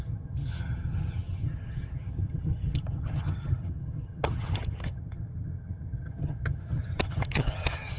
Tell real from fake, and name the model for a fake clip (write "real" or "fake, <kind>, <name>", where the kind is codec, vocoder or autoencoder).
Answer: fake, vocoder, HiFi-GAN